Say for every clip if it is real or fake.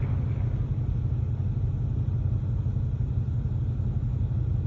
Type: real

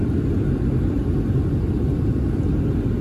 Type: fake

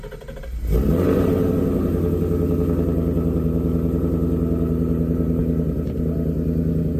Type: real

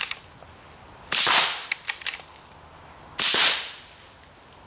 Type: real